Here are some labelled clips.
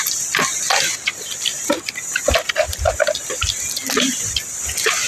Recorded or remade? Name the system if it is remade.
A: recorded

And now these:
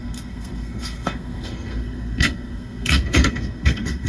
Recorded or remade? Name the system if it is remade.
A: remade, codec, SNAC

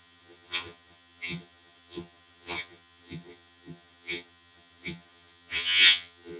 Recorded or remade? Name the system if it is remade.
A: remade, vocoder, HiFi-GAN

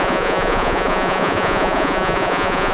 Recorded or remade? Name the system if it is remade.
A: remade, vocoder, Vocos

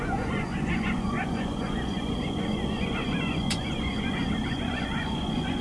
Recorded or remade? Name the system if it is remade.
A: remade, vocoder, Vocos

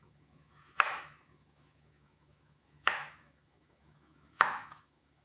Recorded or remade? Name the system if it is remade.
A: remade, autoencoder, DAC-VAE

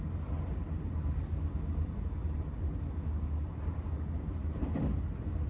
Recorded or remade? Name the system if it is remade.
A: recorded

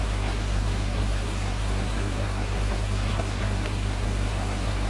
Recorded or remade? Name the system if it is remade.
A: remade, codec, SNAC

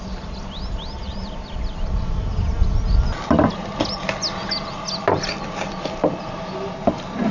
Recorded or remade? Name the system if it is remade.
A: recorded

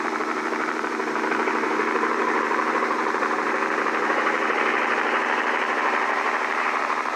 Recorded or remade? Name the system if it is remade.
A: remade, vocoder, BigVGAN v2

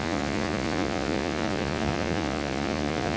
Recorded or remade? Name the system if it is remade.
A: remade, vocoder, Vocos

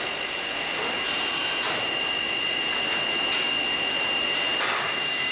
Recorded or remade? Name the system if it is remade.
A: remade, vocoder, BigVGAN v2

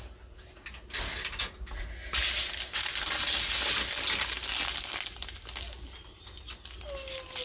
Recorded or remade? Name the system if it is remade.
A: recorded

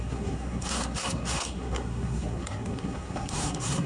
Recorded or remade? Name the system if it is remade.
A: remade, codec, SNAC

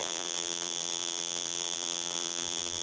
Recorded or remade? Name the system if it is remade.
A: remade, vocoder, BigVGAN v2